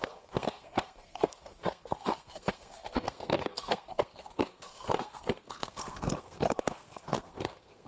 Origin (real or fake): fake